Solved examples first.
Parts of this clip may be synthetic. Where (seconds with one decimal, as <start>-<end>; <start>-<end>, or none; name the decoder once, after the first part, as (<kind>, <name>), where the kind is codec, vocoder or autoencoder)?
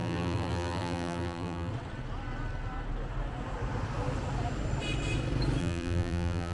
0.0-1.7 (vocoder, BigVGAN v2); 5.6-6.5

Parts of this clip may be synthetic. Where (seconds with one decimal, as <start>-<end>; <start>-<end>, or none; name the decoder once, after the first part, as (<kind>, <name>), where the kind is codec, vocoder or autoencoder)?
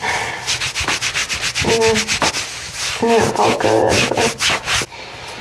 none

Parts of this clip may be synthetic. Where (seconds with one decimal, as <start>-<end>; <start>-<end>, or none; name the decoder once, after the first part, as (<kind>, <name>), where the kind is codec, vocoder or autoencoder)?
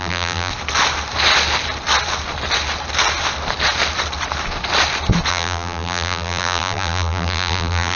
0.0-0.5 (vocoder, BigVGAN v2); 5.3-8.0